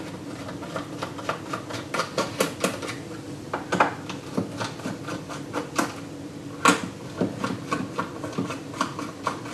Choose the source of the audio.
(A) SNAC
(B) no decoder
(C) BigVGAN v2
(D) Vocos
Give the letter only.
B